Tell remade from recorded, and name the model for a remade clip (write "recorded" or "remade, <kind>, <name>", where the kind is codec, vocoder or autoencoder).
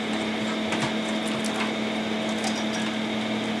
recorded